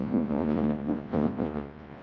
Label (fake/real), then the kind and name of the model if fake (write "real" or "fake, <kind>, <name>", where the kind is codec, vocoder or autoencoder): fake, vocoder, Vocos